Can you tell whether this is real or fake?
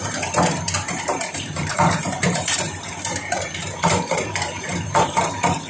fake